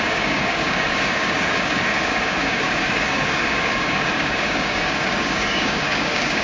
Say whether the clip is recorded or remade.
remade